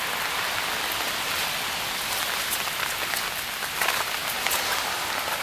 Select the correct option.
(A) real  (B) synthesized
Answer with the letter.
A